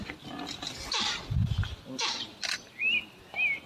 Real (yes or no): yes